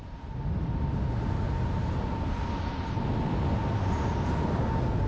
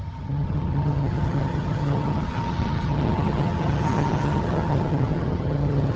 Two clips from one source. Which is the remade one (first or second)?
second